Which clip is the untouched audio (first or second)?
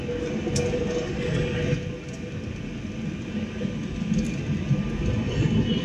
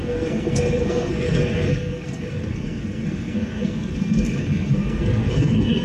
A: first